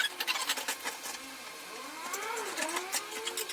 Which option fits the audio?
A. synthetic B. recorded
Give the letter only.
B